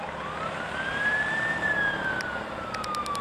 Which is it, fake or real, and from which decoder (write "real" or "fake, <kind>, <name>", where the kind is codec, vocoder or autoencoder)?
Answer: real